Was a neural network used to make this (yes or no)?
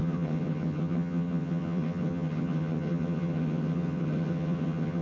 yes